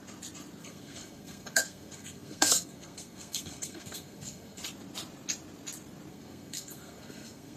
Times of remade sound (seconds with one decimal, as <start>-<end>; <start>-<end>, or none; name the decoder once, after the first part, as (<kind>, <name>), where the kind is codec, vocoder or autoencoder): 0.6-4.6 (codec, SNAC); 6.1-7.6